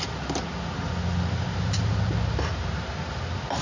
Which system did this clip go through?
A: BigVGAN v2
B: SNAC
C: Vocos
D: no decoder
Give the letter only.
D